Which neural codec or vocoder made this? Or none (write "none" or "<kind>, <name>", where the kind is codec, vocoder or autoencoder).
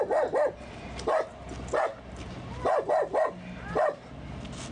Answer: none